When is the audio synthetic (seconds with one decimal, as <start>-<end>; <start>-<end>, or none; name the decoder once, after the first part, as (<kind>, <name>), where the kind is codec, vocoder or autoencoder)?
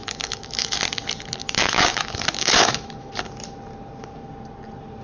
0.0-0.8 (autoencoder, DAC-VAE); 1.4-3.1